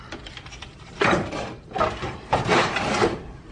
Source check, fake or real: fake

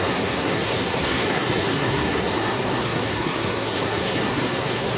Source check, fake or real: fake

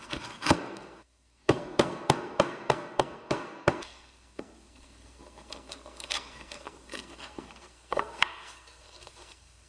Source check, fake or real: fake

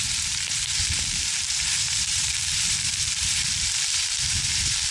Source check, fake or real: fake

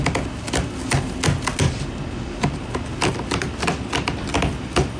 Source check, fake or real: real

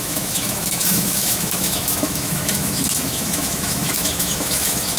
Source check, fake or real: fake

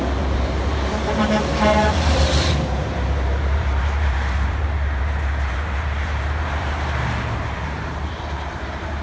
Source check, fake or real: fake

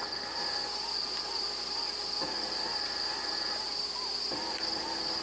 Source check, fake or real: real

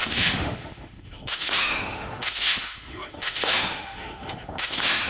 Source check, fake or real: fake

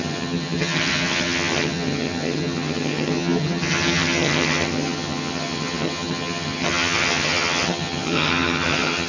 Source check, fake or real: fake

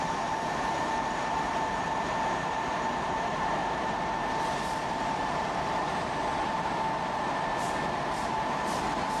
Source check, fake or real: fake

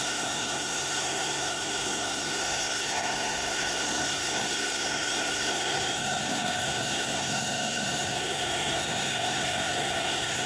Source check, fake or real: fake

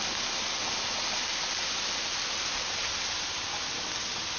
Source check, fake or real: real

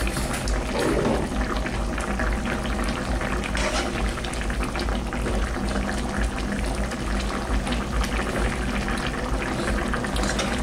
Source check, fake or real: real